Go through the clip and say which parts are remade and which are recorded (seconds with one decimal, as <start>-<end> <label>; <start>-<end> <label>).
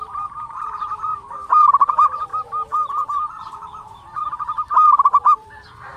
0.0-2.3 remade; 2.3-3.3 recorded; 3.3-6.0 remade